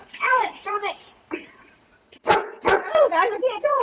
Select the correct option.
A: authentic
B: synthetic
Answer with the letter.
B